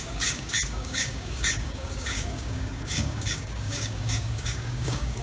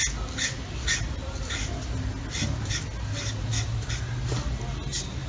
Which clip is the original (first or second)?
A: second